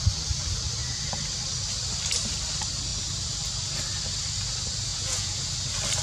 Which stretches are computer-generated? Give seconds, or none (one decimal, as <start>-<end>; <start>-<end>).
4.9-5.5